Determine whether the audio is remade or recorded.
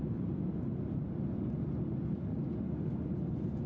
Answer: recorded